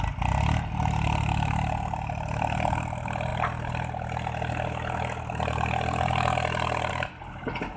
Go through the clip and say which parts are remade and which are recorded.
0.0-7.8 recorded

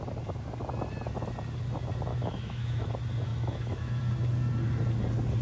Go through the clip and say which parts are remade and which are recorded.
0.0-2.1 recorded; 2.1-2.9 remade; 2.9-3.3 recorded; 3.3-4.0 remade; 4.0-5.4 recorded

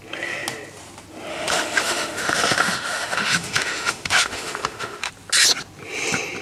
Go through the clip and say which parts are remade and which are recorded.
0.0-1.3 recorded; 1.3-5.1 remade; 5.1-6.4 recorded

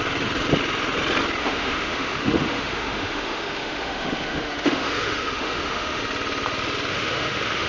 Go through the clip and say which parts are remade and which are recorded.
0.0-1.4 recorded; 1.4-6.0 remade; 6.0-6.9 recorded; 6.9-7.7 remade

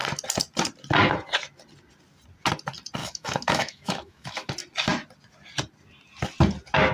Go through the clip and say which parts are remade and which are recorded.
0.0-3.0 recorded; 3.0-4.5 remade; 4.5-6.9 recorded

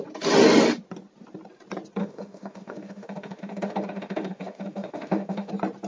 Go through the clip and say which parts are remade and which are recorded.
0.0-2.0 recorded; 2.0-5.5 remade; 5.5-5.9 recorded

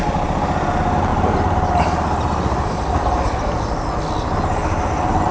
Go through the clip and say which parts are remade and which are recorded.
0.0-5.3 recorded